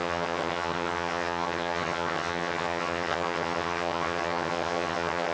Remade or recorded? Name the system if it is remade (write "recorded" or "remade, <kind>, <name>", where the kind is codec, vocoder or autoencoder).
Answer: remade, vocoder, HiFi-GAN